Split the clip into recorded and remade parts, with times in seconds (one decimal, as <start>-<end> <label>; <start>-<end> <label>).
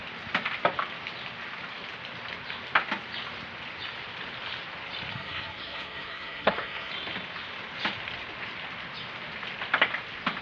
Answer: 0.0-5.1 recorded; 5.1-6.9 remade; 6.9-10.4 recorded